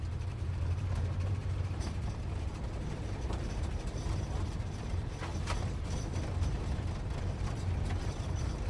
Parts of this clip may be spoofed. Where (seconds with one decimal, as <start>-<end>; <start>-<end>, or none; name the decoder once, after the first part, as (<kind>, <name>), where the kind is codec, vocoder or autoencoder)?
0.0-5.3 (vocoder, BigVGAN v2); 8.0-8.7